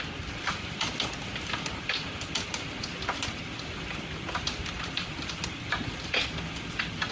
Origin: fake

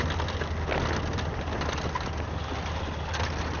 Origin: real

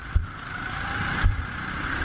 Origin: fake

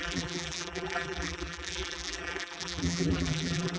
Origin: fake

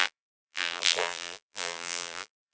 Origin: fake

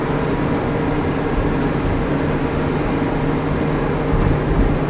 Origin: real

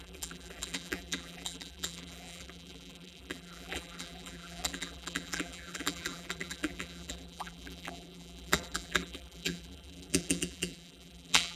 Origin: fake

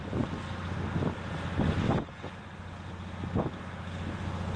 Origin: real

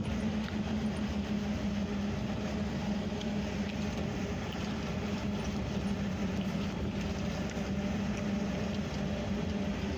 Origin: real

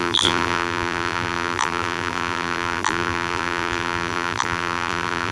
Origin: fake